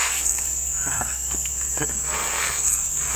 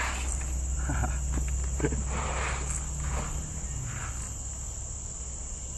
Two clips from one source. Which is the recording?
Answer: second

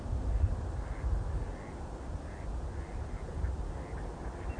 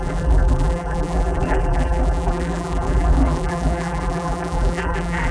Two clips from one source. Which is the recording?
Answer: first